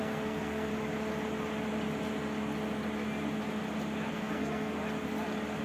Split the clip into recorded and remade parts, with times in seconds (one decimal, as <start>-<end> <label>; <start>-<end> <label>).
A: 0.0-0.7 remade; 0.7-4.1 recorded; 4.1-4.8 remade; 4.8-5.6 recorded